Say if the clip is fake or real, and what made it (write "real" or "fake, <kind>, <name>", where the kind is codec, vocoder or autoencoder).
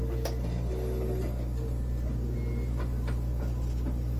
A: real